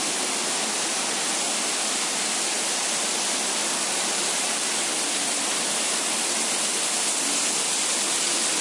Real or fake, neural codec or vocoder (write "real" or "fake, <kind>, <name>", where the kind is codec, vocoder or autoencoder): real